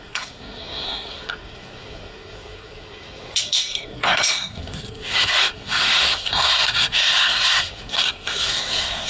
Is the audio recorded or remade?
remade